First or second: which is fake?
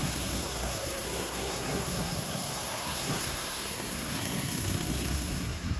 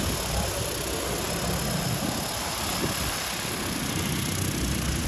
first